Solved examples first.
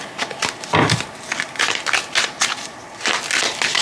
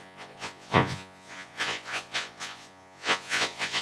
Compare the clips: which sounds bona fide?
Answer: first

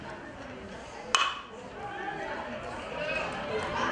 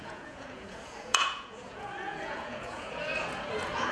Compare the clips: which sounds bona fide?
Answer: first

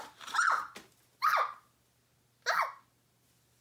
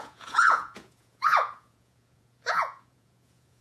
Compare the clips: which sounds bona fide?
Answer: first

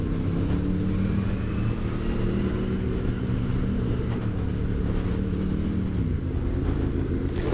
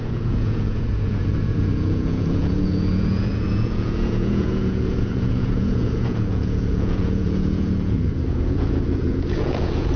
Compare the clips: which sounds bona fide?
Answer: first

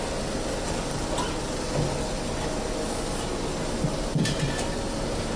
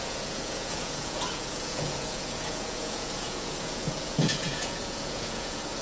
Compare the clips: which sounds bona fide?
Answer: first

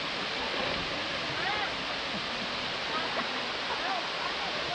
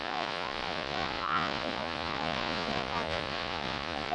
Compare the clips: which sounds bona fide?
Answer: first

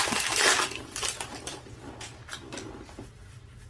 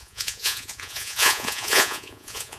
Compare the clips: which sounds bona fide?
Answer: first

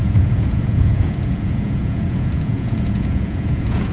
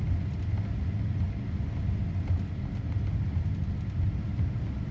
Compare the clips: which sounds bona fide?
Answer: second